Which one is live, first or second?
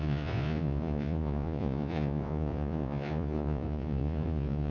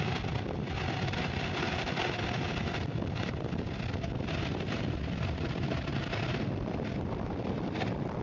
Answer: second